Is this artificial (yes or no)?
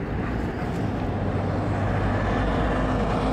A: no